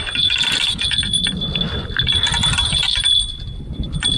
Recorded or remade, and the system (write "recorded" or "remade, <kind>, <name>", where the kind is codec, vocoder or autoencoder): recorded